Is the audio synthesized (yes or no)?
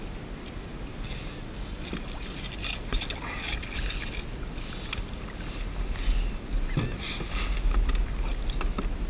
no